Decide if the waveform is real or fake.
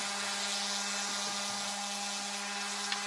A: real